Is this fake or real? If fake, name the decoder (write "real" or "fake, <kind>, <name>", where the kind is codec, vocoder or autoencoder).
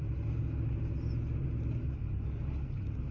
real